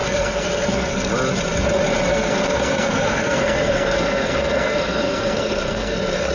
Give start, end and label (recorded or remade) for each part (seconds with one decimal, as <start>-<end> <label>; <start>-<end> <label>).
0.0-1.1 remade; 1.1-2.1 recorded; 2.1-6.3 remade